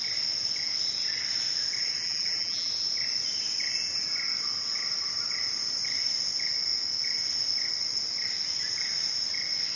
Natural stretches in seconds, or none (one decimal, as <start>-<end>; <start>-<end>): 0.0-2.0; 2.7-9.8